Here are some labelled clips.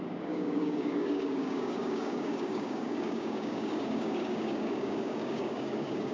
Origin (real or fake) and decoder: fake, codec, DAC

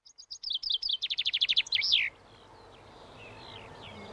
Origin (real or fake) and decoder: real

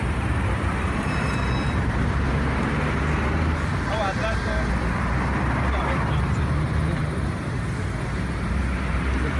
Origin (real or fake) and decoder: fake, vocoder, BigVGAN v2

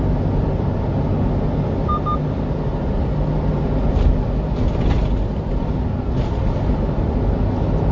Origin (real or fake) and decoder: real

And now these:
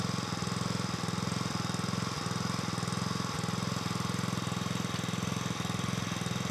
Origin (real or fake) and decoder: real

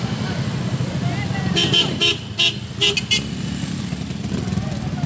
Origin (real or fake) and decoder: real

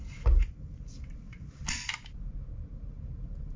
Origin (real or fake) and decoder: real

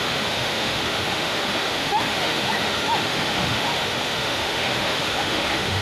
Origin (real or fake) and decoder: fake, autoencoder, DAC-VAE